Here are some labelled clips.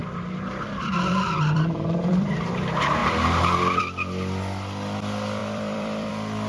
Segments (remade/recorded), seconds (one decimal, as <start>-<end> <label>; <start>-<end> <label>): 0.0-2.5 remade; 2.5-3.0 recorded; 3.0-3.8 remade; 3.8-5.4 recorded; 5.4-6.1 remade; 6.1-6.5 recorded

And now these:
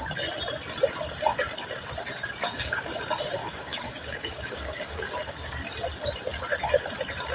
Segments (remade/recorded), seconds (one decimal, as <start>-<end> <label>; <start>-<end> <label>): 0.0-2.4 recorded; 2.4-3.0 remade; 3.0-3.4 recorded; 3.4-5.1 remade; 5.1-7.3 recorded

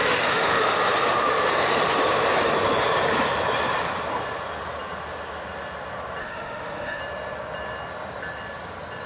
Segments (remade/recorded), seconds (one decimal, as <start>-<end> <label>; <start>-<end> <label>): 0.0-0.8 remade; 0.8-6.2 recorded; 6.2-7.0 remade; 7.0-9.1 recorded

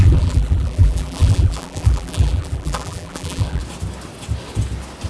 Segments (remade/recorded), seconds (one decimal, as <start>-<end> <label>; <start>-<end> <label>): 0.0-3.6 remade; 3.6-5.1 recorded

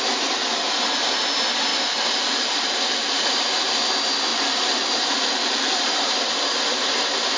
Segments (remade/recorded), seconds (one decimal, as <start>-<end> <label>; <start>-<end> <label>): 0.0-1.7 recorded; 1.7-3.8 remade; 3.8-4.3 recorded; 4.3-6.3 remade; 6.3-7.4 recorded

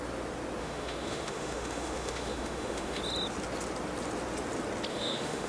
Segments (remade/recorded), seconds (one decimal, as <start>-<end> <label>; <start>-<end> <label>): 0.0-0.6 recorded; 0.6-3.0 remade; 3.0-4.9 recorded; 4.9-5.5 remade

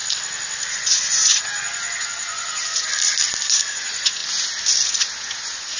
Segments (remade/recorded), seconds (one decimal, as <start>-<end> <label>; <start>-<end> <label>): 0.0-0.7 recorded; 0.7-2.9 remade; 2.9-3.7 recorded; 3.7-4.2 remade; 4.2-5.0 recorded; 5.0-5.8 remade